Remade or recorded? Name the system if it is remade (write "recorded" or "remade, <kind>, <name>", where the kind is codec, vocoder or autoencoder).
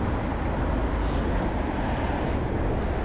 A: recorded